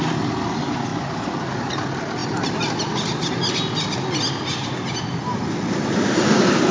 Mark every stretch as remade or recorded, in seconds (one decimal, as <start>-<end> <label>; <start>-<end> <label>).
0.0-6.7 recorded

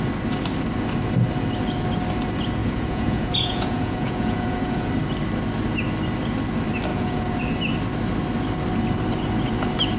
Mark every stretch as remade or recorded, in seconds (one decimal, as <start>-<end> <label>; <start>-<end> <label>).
0.0-2.6 recorded; 2.6-4.9 remade; 4.9-6.9 recorded; 6.9-7.4 remade; 7.4-10.0 recorded

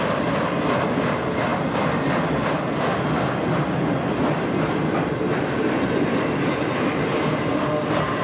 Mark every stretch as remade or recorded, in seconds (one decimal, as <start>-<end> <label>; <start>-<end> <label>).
0.0-8.2 recorded

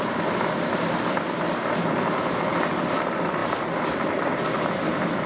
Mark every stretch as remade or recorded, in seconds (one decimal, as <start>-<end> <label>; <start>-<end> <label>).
0.0-5.3 recorded